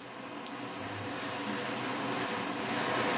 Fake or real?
real